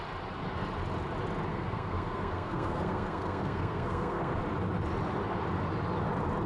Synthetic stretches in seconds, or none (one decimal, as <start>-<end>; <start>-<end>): 1.5-4.4